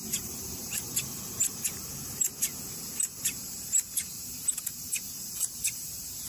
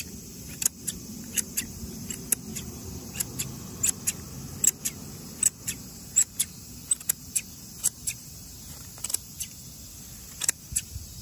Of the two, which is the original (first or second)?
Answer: second